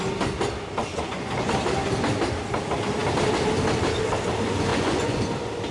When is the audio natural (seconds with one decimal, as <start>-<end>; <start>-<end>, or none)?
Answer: 0.0-0.9; 1.5-4.7; 5.2-5.7